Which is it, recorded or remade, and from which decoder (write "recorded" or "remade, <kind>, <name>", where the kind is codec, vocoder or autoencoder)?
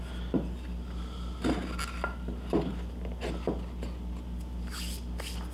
recorded